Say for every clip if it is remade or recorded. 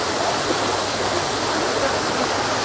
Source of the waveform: recorded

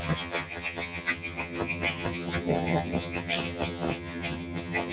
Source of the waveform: remade